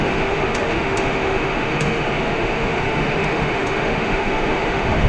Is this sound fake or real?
fake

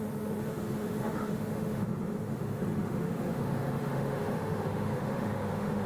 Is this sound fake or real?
fake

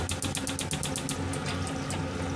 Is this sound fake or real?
real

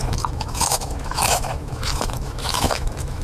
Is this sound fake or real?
fake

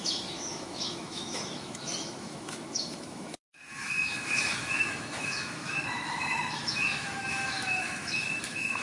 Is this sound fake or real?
fake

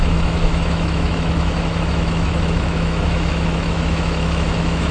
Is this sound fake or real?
fake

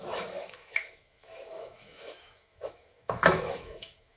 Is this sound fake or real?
fake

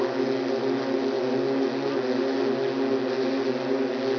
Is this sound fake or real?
real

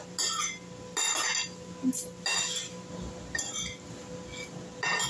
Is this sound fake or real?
real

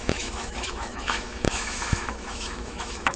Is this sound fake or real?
fake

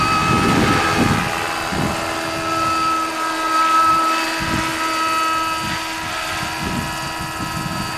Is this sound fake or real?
real